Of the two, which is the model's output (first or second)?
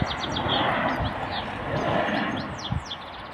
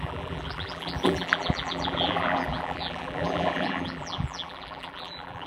second